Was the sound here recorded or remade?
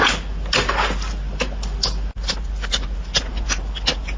recorded